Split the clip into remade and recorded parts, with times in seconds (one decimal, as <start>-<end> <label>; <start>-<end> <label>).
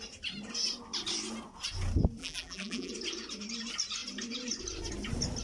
0.0-2.2 recorded; 2.2-2.9 remade; 2.9-5.4 recorded